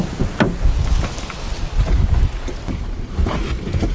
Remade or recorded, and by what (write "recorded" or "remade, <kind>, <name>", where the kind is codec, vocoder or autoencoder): recorded